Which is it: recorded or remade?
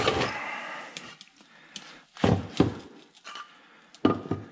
recorded